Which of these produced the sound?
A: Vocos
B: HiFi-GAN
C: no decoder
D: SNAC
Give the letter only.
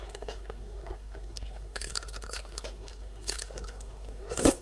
D